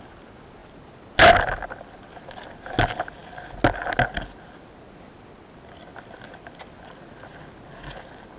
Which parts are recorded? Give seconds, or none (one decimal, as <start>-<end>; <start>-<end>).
0.0-8.4